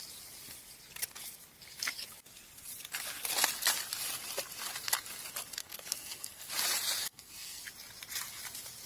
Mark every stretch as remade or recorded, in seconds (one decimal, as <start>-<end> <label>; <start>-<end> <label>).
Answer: 0.0-5.6 recorded; 5.6-6.5 remade; 6.5-7.0 recorded; 7.0-7.6 remade; 7.6-8.9 recorded

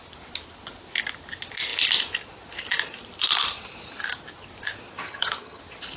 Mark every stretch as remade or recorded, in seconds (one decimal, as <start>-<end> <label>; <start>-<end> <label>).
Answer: 0.0-5.0 recorded; 5.0-5.6 remade; 5.6-6.0 recorded

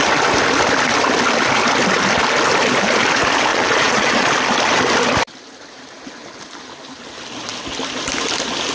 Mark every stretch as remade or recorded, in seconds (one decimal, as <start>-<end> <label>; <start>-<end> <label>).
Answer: 0.0-3.5 recorded; 3.5-4.3 remade; 4.3-8.7 recorded